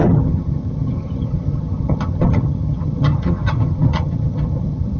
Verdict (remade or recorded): remade